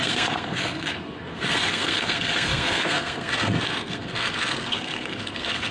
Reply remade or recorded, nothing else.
remade